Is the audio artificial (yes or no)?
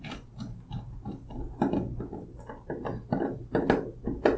no